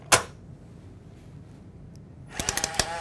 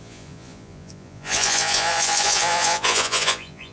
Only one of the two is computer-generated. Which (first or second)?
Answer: second